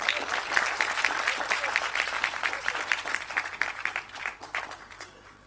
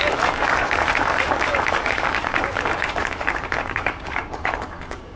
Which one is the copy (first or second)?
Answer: second